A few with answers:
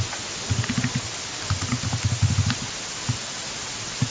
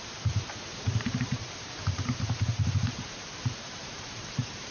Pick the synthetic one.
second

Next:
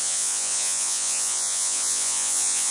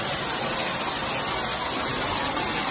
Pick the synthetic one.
first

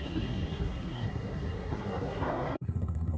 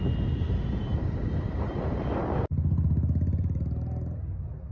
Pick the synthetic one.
first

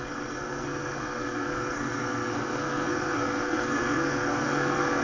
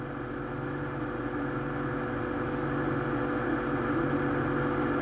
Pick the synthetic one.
first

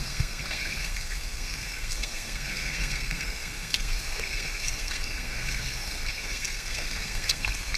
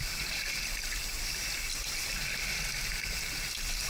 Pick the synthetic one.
first